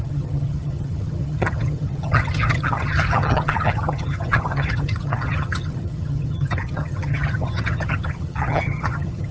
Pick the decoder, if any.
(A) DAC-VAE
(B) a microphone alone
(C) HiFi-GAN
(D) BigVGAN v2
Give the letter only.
C